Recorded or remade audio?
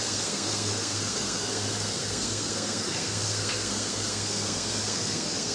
remade